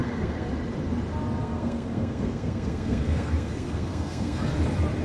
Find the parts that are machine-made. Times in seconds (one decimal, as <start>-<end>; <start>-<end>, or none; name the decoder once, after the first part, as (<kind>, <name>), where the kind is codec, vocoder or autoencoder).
0.0-0.5 (codec, SNAC); 1.4-4.4